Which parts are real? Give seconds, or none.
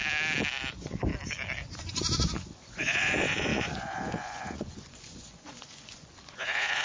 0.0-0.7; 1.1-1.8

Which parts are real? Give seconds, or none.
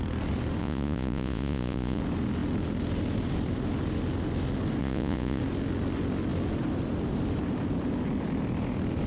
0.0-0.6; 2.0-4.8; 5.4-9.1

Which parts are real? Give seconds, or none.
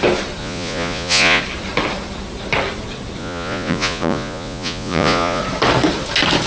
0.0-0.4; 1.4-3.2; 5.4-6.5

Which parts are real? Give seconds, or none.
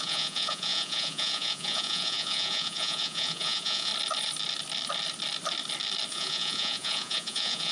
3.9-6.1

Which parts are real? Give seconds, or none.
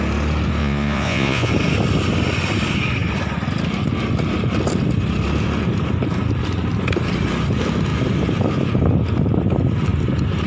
0.0-0.6; 1.5-10.5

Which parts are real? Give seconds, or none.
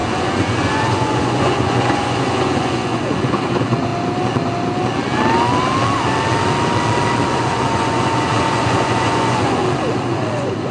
3.9-7.3; 9.6-10.1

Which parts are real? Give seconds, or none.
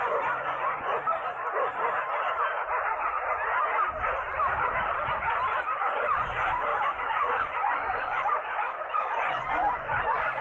1.0-5.6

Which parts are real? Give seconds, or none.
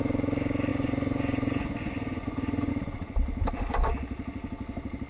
0.0-0.7; 2.7-5.1